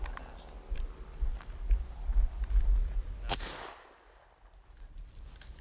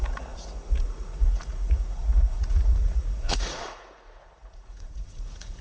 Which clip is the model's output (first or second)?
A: second